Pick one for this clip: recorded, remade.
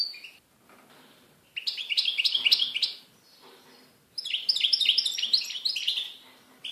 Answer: recorded